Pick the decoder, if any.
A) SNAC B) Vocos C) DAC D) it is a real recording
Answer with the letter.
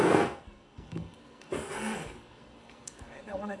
A